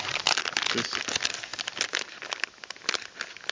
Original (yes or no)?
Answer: yes